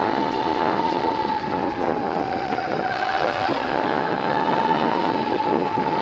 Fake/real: fake